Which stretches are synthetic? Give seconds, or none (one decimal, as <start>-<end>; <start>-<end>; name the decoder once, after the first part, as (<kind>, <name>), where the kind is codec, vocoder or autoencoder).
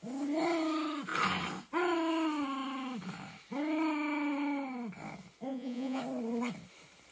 5.5-6.0 (vocoder, Vocos)